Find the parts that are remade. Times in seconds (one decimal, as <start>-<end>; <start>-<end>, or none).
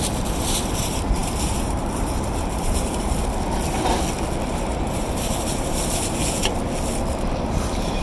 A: 0.0-3.9; 4.5-6.4; 7.1-8.0